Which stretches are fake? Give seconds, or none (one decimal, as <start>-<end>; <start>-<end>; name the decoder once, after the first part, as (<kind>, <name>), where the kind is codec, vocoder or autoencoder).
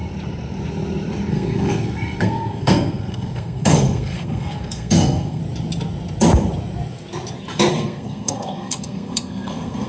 1.3-5.4 (codec, SNAC); 7.7-9.9